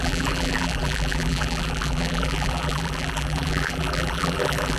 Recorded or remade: remade